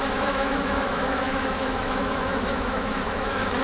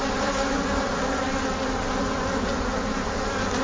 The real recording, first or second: second